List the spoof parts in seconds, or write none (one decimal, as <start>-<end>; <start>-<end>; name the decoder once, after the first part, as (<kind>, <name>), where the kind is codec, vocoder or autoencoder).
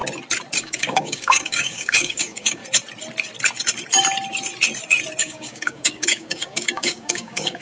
0.6-2.6 (codec, DAC); 5.2-7.6